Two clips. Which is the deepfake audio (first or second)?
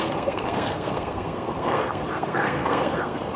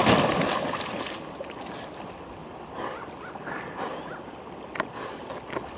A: first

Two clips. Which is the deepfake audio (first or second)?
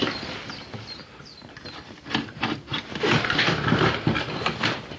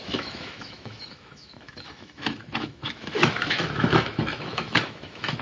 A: second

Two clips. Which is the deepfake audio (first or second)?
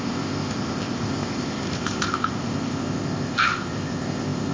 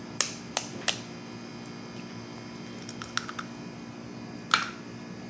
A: first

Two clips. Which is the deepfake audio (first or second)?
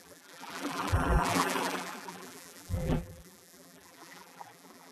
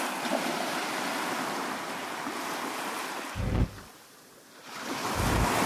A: first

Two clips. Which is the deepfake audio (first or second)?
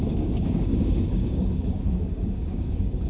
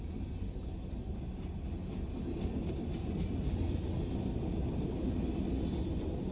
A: first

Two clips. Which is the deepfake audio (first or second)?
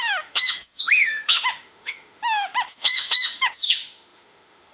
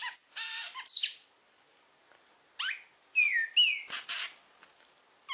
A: first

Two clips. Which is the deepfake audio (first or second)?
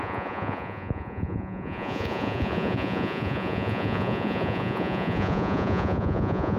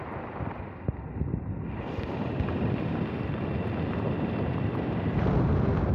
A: first